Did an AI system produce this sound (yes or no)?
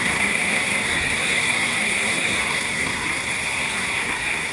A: yes